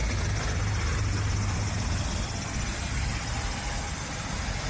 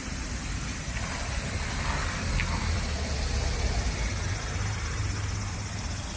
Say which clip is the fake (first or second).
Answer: second